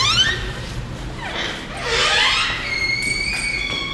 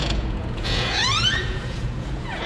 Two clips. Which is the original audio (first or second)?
first